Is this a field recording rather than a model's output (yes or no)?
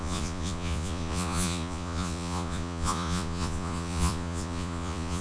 no